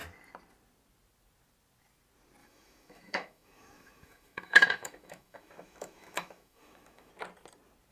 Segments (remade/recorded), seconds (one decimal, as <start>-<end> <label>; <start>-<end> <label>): 0.0-2.4 recorded; 2.4-7.1 remade; 7.1-7.9 recorded